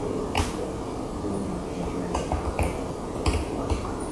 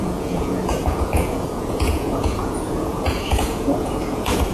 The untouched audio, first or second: first